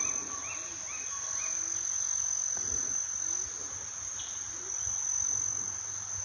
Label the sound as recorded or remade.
recorded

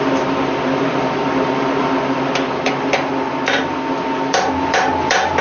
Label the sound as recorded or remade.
remade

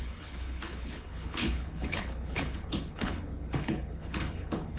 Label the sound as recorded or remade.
remade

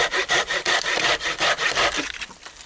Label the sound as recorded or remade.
remade